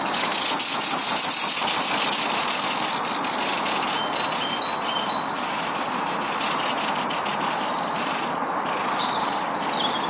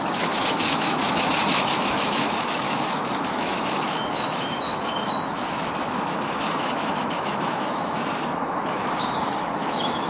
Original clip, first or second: first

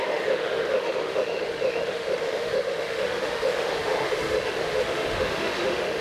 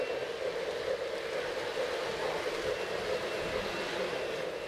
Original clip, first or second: second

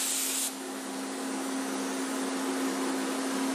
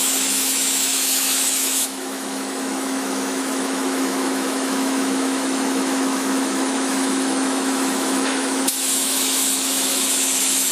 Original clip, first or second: first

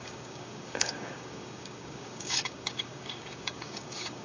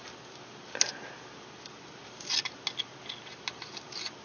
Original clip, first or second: second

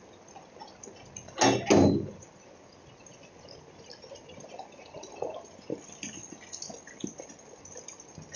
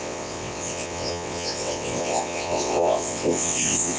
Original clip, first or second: first